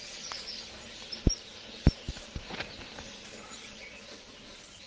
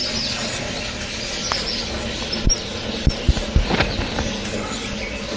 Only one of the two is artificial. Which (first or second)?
first